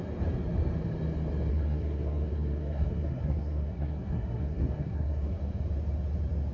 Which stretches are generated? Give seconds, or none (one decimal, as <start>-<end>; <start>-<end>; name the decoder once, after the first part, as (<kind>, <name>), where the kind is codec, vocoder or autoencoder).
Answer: 1.5-5.4 (codec, SNAC)